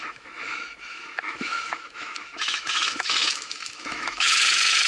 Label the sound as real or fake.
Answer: fake